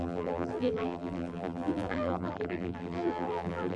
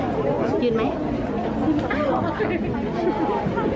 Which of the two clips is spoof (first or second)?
first